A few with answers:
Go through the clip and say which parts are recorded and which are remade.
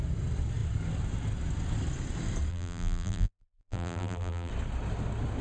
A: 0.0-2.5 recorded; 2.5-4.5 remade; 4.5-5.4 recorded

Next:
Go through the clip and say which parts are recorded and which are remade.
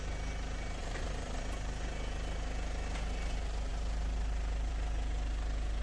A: 0.0-0.8 recorded; 0.8-1.4 remade; 1.4-5.8 recorded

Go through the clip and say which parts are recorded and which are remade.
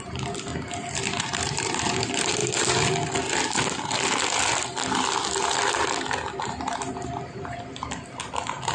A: 0.0-0.5 remade; 0.5-1.2 recorded; 1.2-2.4 remade; 2.4-6.3 recorded; 6.3-8.7 remade